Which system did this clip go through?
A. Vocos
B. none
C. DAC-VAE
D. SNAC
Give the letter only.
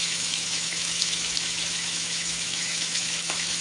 C